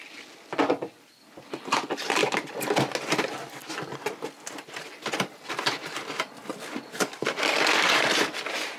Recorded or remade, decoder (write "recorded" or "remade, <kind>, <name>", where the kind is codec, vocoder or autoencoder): recorded